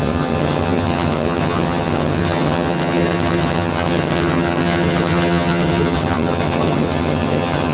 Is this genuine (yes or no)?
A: no